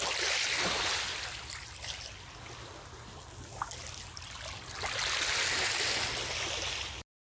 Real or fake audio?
real